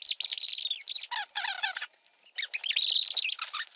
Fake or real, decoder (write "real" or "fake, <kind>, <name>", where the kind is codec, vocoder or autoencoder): real